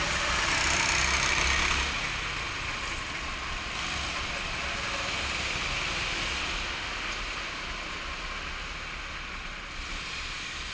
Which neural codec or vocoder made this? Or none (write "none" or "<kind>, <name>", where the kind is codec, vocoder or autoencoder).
none